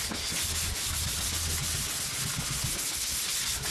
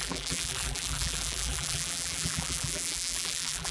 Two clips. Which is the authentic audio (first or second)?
first